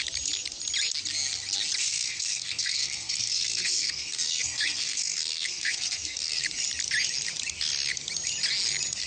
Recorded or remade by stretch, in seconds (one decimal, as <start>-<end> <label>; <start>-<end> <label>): 0.0-1.8 recorded; 1.8-6.4 remade; 6.4-9.1 recorded